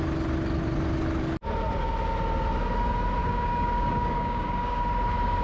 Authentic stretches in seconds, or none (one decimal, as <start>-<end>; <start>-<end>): 0.0-3.2; 4.8-5.4

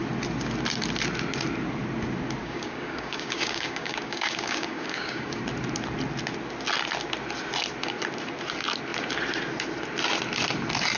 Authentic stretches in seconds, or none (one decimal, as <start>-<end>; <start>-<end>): 0.0-2.4; 5.4-11.0

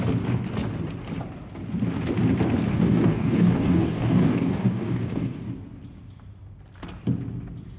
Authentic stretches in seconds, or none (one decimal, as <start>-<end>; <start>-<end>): 0.0-2.7; 5.4-7.8

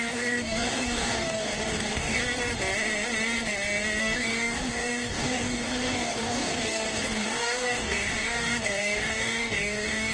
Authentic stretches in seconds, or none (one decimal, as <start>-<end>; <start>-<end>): 2.2-4.0

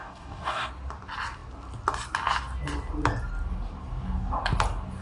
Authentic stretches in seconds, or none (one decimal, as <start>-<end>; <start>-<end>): 0.7-5.0

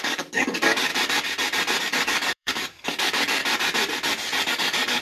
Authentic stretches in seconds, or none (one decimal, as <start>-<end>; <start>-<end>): 0.9-1.8; 3.4-4.5